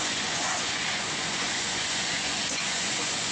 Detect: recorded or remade remade